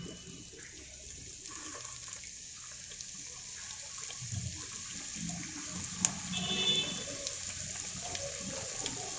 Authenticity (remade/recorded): recorded